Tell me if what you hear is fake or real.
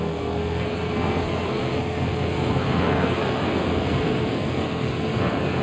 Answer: fake